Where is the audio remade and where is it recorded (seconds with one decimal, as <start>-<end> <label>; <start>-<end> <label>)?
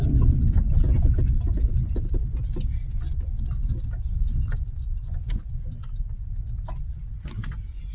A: 0.0-7.9 recorded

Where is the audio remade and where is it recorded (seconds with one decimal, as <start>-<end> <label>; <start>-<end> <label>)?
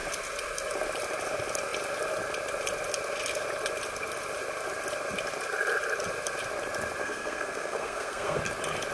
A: 0.0-7.0 recorded; 7.0-8.4 remade; 8.4-8.9 recorded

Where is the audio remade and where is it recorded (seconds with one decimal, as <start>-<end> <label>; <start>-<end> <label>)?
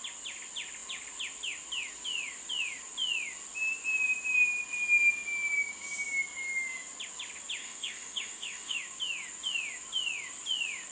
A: 0.0-7.6 recorded; 7.6-8.8 remade; 8.8-10.9 recorded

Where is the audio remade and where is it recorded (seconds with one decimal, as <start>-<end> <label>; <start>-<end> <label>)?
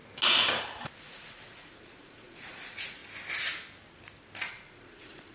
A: 0.0-1.0 recorded; 1.0-3.0 remade; 3.0-4.5 recorded; 4.5-5.3 remade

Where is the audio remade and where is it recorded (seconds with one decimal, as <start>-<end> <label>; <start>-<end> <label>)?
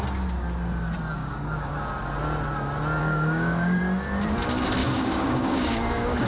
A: 0.0-1.2 recorded; 1.2-1.7 remade; 1.7-3.0 recorded; 3.0-3.8 remade; 3.8-4.8 recorded; 4.8-6.3 remade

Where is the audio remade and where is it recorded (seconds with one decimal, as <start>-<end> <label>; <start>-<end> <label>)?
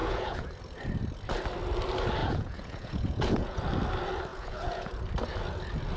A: 0.0-0.5 remade; 0.5-2.2 recorded; 2.2-3.6 remade; 3.6-4.3 recorded; 4.3-4.9 remade; 4.9-6.0 recorded